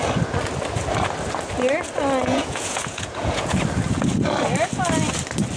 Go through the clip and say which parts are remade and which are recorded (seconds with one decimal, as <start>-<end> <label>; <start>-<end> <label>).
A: 0.0-2.3 recorded; 2.3-3.6 remade; 3.6-5.6 recorded